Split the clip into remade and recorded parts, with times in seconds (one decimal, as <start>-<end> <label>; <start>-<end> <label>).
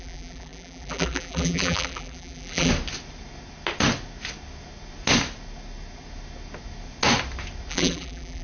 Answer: 0.0-2.7 remade; 2.7-7.7 recorded; 7.7-8.4 remade